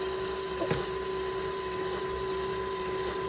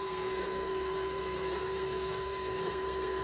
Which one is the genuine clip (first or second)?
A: first